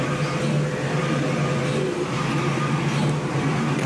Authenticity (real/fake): real